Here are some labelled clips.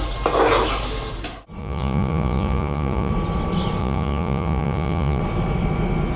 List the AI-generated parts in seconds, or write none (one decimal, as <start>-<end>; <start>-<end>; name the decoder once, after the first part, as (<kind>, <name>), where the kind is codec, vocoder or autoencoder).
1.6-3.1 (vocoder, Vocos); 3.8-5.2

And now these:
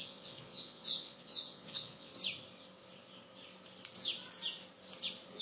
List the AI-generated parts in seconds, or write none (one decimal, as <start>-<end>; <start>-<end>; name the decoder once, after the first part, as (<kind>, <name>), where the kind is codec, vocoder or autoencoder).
0.0-2.1 (vocoder, Vocos)

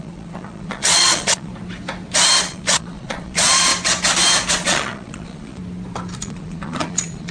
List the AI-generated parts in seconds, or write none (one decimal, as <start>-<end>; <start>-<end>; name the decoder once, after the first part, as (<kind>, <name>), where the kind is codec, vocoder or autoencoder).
0.0-1.5 (vocoder, Vocos); 2.4-3.7; 4.5-5.6; 6.2-7.3

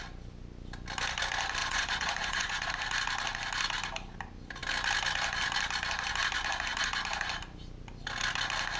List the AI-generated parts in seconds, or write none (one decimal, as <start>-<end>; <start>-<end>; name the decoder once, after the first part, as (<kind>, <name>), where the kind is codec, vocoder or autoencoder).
1.6-2.7 (vocoder, Vocos)